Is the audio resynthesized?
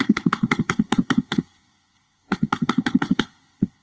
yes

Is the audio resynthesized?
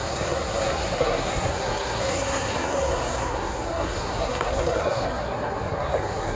yes